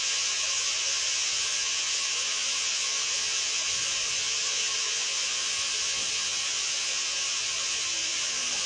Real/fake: fake